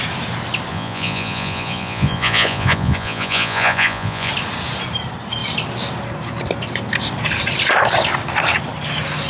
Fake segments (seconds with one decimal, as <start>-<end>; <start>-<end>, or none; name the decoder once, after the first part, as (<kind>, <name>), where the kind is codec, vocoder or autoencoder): 0.7-4.3 (vocoder, Vocos)